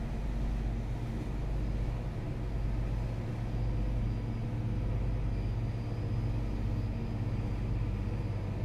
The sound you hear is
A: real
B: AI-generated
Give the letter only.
A